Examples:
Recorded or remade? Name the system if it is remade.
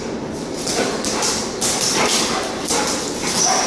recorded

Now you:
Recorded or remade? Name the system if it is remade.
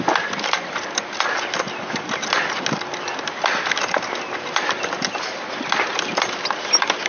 recorded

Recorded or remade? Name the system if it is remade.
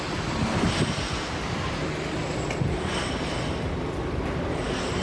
recorded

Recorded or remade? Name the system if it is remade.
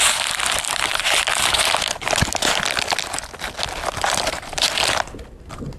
recorded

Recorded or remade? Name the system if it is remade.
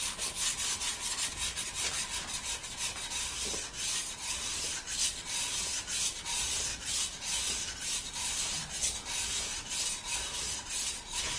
recorded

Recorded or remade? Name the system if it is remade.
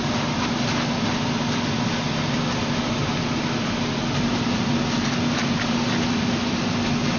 recorded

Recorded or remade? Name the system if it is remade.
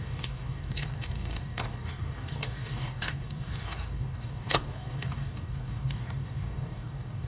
remade, codec, DAC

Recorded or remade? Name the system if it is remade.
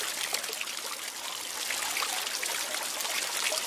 recorded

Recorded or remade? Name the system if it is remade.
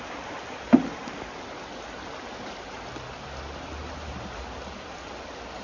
recorded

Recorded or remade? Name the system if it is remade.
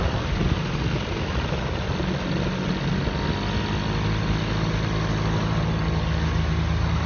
recorded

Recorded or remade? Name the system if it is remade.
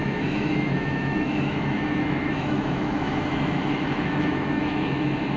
remade, autoencoder, DAC-VAE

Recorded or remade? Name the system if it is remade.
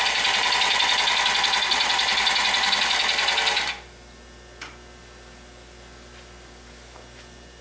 recorded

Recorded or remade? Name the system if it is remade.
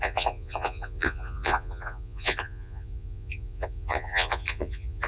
remade, vocoder, Vocos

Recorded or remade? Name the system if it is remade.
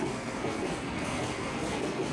remade, codec, SNAC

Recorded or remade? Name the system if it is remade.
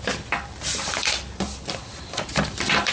recorded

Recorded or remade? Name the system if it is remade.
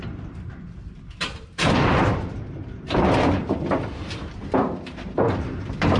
remade, vocoder, BigVGAN v2